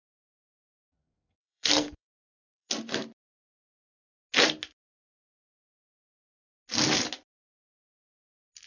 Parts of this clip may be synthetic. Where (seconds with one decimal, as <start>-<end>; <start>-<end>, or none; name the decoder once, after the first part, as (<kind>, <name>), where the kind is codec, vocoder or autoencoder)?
0.0-2.7 (codec, SNAC)